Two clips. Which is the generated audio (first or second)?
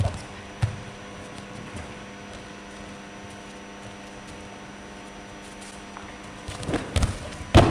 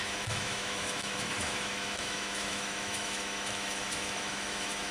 second